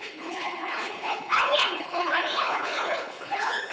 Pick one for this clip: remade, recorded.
remade